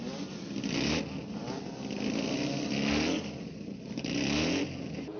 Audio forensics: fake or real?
real